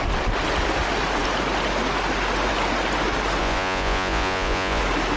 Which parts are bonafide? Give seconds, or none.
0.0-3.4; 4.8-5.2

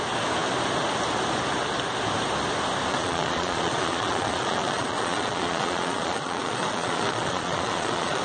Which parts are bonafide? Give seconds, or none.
0.0-2.9

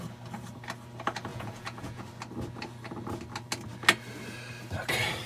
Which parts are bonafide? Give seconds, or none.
0.0-1.3; 2.0-5.3

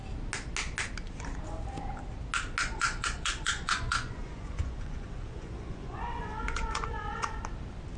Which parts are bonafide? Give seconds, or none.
0.0-2.6; 7.4-8.0

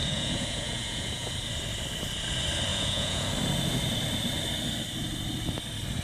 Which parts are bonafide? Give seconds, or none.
1.3-2.7; 3.3-6.0

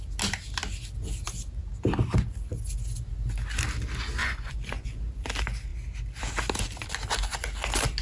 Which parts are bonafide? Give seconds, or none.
0.0-4.2; 5.0-8.0

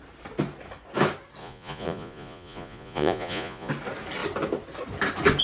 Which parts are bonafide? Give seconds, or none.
0.0-1.4; 3.7-5.4